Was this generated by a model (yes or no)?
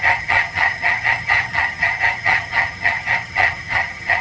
yes